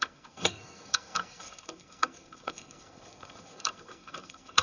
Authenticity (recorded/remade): remade